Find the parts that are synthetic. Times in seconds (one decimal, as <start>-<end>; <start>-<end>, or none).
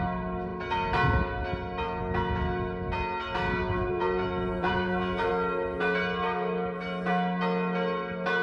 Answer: 3.6-5.3